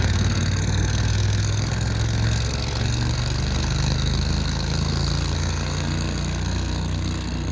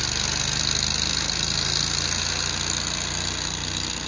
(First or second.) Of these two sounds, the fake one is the first